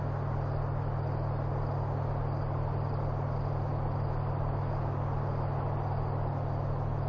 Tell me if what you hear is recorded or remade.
recorded